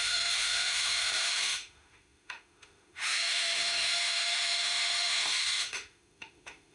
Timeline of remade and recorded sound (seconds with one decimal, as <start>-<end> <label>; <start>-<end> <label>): 0.0-6.7 remade